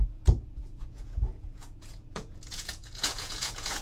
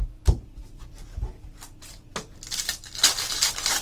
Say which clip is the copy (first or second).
first